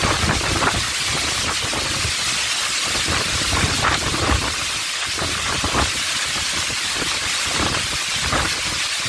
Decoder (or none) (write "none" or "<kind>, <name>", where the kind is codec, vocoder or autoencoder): none